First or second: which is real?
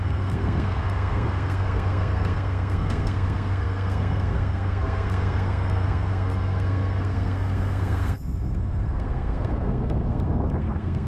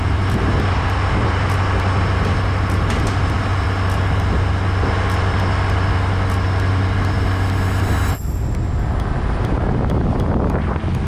second